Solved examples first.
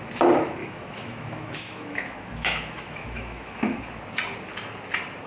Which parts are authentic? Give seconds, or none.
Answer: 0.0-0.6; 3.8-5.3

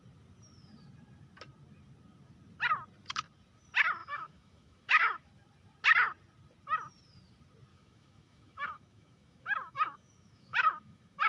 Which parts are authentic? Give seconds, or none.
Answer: 0.0-4.0; 5.3-7.7

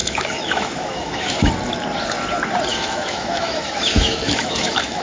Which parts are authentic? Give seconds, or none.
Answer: 1.5-2.7